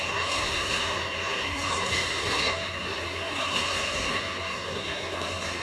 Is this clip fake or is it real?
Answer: fake